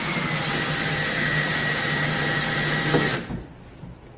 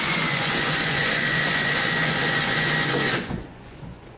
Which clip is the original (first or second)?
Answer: first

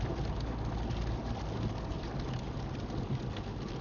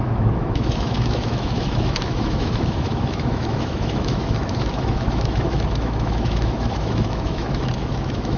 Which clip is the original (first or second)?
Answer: first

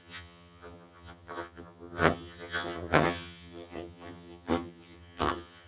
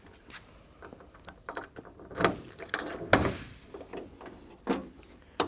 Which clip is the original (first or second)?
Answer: second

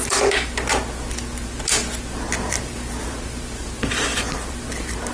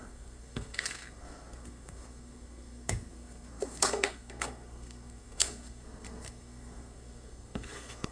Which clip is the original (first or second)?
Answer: first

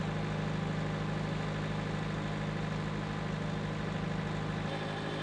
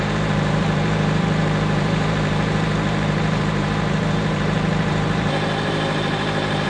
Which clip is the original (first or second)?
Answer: first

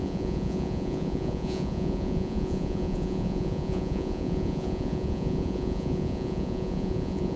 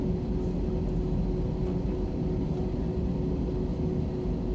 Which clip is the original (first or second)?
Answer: second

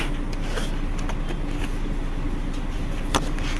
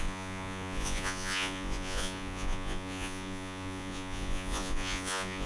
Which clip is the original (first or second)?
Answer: first